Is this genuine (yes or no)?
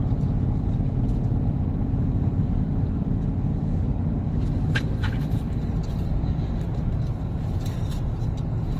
yes